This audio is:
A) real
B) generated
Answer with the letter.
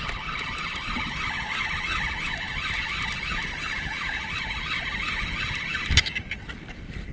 A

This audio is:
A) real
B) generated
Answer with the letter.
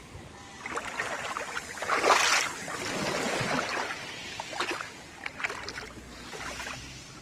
A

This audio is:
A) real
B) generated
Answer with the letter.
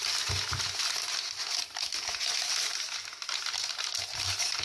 A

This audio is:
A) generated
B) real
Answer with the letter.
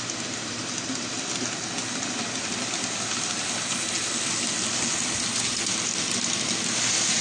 B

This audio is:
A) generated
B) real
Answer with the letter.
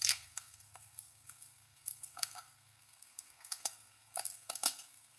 A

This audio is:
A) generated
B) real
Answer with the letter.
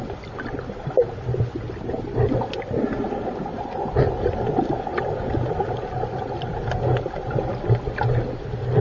B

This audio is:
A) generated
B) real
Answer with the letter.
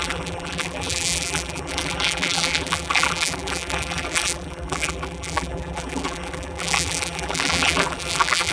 A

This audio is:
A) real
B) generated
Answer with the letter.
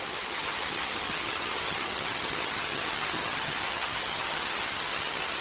B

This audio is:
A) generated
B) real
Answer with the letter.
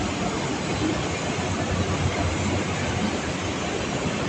B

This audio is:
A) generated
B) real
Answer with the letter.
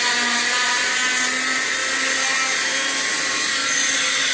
B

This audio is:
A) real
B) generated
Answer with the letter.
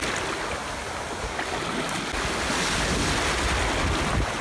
A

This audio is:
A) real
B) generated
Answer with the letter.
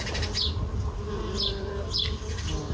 A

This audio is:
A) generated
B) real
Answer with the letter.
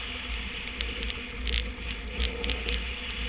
B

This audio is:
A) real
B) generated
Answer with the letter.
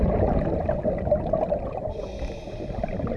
A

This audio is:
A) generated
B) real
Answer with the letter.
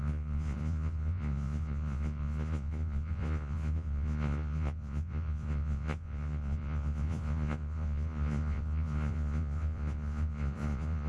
A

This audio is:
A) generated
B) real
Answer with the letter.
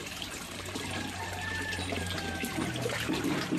A